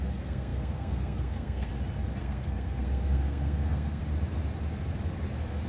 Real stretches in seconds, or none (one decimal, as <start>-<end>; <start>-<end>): 1.7-2.2; 4.0-5.7